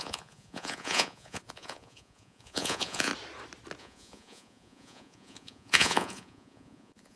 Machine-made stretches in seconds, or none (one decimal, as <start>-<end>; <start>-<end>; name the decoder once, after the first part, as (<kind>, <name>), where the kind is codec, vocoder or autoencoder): 0.0-3.1 (vocoder, Vocos); 3.8-7.2